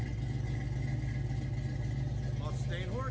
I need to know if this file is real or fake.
real